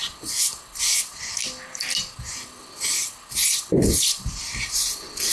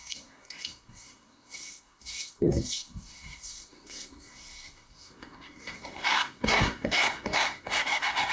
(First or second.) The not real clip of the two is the second